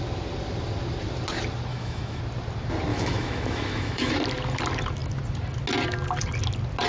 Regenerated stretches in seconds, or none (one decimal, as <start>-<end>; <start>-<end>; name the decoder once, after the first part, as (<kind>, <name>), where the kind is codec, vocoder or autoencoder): 1.7-2.2 (autoencoder, DAC-VAE); 2.9-4.1